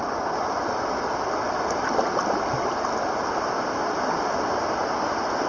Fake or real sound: real